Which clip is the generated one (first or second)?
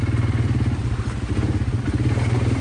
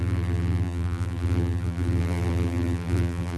second